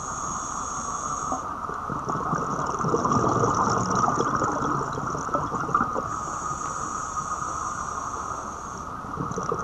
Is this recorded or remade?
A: recorded